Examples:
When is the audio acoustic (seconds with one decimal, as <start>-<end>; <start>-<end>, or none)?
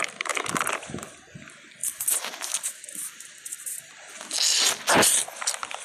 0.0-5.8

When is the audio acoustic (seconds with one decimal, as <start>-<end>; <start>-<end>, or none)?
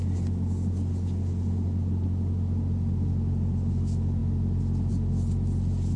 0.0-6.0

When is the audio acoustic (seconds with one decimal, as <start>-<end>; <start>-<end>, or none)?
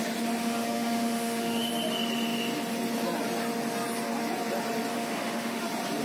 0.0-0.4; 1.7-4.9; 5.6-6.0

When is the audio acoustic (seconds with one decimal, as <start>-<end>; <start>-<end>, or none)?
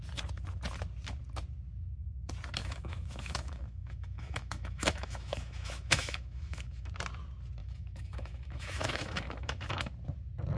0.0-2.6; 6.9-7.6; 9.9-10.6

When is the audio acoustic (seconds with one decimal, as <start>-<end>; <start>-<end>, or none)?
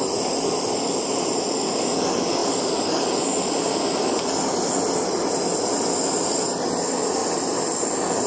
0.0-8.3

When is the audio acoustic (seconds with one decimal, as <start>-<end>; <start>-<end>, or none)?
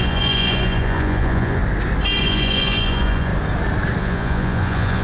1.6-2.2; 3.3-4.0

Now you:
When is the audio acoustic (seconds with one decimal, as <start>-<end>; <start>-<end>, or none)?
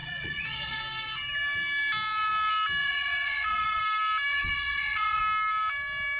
0.8-2.8; 3.8-4.3; 5.2-6.2